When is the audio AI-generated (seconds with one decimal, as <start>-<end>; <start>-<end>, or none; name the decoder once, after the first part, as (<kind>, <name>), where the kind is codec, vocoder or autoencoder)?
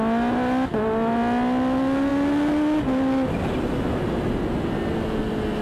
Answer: none